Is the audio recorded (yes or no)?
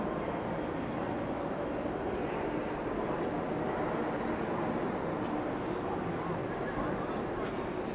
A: yes